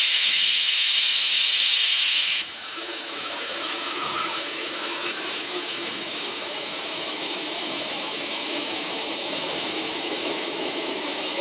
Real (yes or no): no